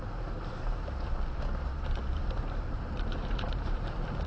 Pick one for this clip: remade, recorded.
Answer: remade